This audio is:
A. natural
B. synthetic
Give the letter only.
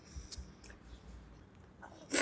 A